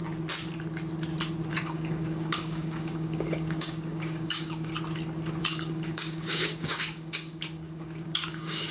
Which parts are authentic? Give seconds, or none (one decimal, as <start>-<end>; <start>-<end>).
0.0-1.5; 4.7-5.4